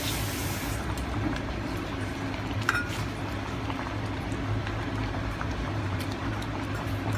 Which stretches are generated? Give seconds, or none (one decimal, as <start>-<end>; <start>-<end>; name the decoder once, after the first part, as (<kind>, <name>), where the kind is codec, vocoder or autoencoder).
0.4-2.1 (vocoder, BigVGAN v2); 5.2-6.3